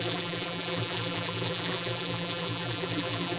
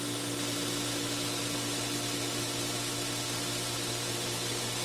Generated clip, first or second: first